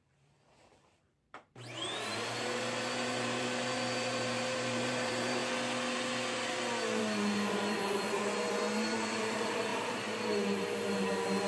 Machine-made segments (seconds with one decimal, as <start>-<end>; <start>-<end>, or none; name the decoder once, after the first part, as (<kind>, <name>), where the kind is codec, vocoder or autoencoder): 0.0-5.4 (vocoder, BigVGAN v2); 7.0-11.5